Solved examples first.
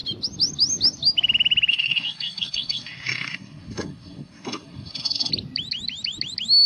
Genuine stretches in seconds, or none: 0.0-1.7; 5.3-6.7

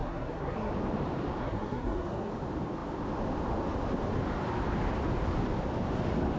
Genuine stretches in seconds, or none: 0.7-1.4; 2.3-6.4

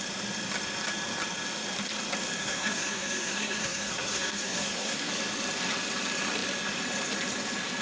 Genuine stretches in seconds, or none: 0.0-2.4; 5.1-7.8

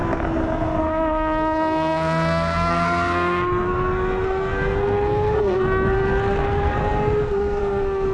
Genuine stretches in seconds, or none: 0.0-0.8

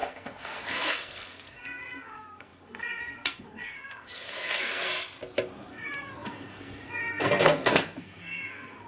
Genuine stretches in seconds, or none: 4.9-5.7